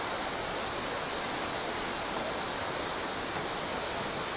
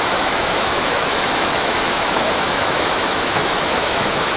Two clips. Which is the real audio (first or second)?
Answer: first